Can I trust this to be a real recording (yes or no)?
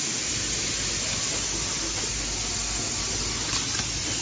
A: yes